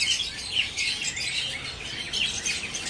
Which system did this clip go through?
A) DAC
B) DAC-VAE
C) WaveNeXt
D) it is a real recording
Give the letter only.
D